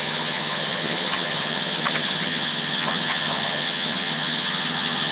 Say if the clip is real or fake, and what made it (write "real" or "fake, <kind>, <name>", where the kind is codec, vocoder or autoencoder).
fake, vocoder, HiFi-GAN